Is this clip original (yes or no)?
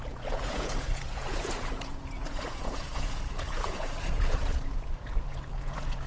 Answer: no